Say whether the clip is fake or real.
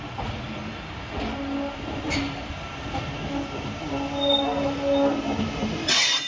real